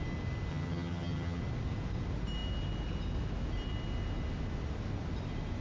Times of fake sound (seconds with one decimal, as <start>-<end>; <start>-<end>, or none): 0.5-1.4